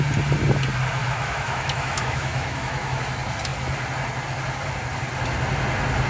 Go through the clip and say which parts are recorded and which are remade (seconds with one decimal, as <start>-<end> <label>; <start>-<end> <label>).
0.0-1.0 recorded; 1.0-3.0 remade; 3.0-6.1 recorded